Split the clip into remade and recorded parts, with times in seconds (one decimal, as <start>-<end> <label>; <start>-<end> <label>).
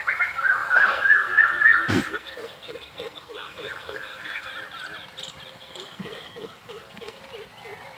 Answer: 0.0-4.5 remade; 4.5-5.5 recorded; 5.5-7.2 remade; 7.2-8.0 recorded